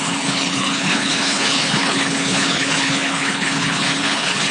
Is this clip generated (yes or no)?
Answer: yes